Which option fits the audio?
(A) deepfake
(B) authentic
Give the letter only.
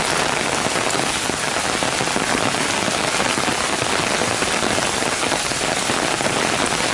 B